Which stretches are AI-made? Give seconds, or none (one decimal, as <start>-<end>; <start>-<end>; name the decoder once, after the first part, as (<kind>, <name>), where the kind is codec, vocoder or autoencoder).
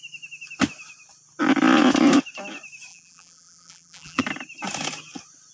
2.9-4.2 (vocoder, BigVGAN v2)